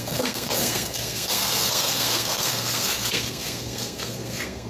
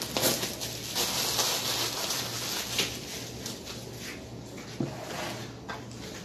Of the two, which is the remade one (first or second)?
first